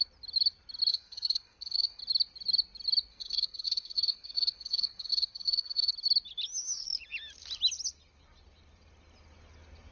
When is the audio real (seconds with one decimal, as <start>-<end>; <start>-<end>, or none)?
0.0-0.9; 2.0-3.1; 5.9-9.9